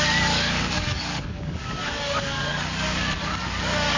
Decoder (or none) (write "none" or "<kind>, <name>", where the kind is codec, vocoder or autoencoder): codec, DAC